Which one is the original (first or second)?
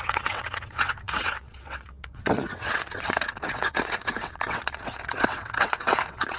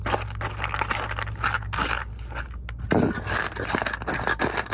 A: second